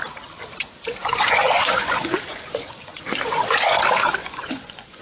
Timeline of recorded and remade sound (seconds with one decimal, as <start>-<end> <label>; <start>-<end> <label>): 0.0-1.0 recorded; 1.0-3.8 remade; 3.8-4.2 recorded; 4.2-5.0 remade